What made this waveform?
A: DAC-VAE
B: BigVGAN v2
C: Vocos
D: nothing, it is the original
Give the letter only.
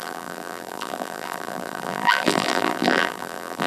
B